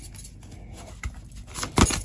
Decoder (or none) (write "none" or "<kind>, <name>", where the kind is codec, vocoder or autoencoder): none